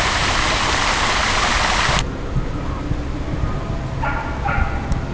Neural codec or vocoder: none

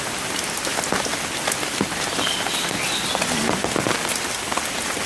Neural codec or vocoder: none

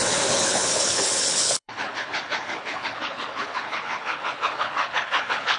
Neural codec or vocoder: codec, HILCodec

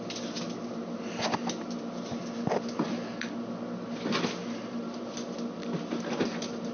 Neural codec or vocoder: none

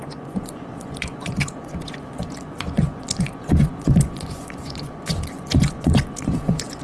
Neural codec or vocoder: vocoder, Vocos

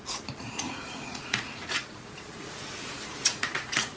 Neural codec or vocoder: vocoder, Vocos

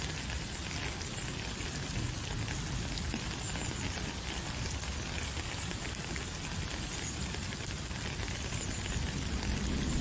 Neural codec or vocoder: none